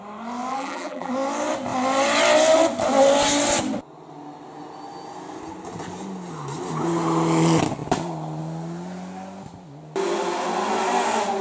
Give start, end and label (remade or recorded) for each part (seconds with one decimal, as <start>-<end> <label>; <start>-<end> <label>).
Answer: 0.0-0.5 recorded; 0.5-1.1 remade; 1.1-11.4 recorded